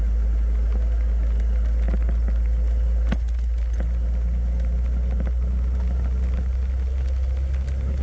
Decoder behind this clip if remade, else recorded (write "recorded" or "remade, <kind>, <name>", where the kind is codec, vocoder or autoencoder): recorded